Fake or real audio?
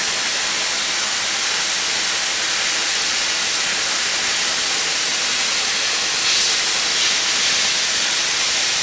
real